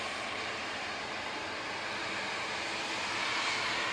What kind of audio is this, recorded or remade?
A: recorded